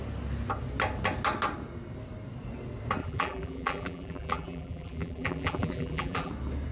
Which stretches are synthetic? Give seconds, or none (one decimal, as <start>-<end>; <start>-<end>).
3.0-6.3